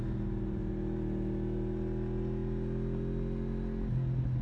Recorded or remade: recorded